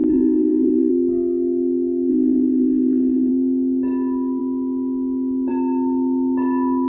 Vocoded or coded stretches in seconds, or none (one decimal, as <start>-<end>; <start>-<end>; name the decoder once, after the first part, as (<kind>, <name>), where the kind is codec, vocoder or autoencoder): 0.0-0.9 (vocoder, BigVGAN v2); 2.1-3.3